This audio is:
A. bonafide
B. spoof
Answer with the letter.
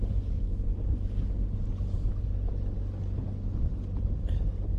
A